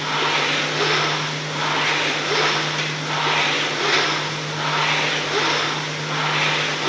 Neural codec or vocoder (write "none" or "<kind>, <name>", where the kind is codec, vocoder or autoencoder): none